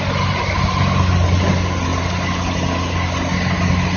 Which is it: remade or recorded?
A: recorded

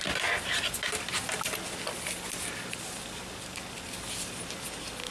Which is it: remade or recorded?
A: recorded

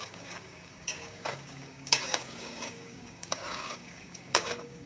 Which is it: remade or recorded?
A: remade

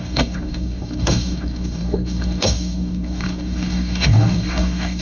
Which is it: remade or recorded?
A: remade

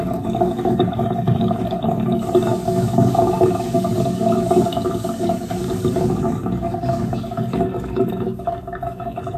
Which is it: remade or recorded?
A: remade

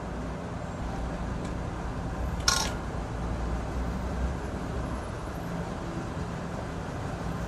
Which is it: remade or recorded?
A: recorded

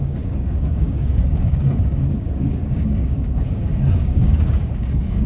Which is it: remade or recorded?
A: remade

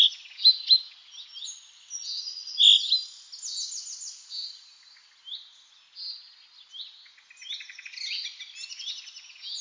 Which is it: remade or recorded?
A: recorded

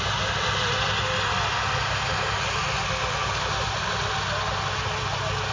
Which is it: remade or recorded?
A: recorded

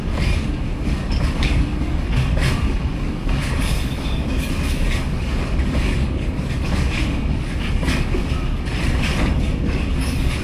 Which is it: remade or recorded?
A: remade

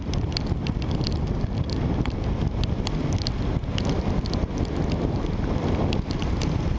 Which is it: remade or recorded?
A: recorded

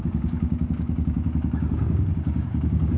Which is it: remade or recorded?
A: remade